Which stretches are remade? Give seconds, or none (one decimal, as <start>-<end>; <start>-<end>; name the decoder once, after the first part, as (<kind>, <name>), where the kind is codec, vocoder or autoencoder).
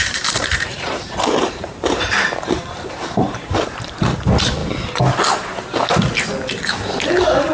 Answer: 0.0-4.0 (vocoder, BigVGAN v2)